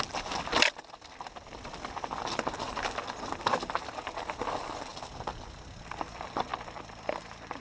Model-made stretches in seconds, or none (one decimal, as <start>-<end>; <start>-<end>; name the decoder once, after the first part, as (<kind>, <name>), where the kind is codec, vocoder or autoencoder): none